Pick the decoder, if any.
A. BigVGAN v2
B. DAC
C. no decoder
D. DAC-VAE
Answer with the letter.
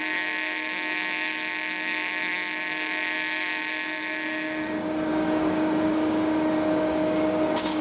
B